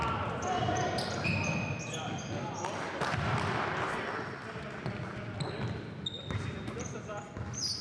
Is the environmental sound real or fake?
real